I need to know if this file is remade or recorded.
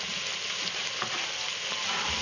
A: recorded